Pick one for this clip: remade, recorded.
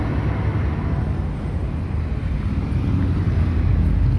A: recorded